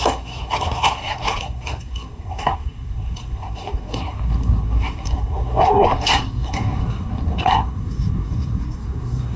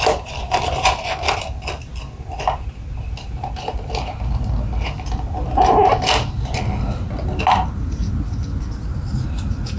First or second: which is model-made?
first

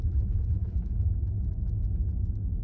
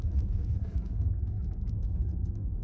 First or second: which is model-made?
second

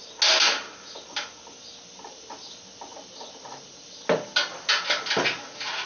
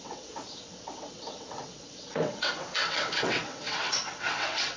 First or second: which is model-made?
second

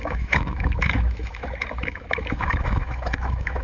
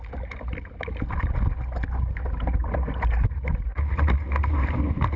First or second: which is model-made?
first